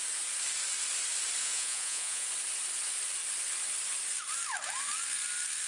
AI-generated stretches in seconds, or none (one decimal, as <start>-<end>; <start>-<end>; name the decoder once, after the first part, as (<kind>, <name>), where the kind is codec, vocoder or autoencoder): 1.4-2.3 (vocoder, Vocos)